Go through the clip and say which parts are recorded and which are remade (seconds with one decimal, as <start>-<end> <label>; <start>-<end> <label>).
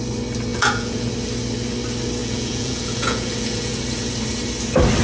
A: 0.0-0.5 recorded; 0.5-1.1 remade; 1.1-2.2 recorded; 2.2-3.8 remade; 3.8-5.0 recorded